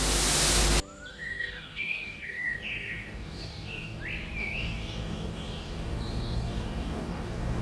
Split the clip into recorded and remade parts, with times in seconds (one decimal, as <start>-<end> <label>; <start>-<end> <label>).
0.0-1.1 recorded; 1.1-4.0 remade; 4.0-4.4 recorded; 4.4-7.6 remade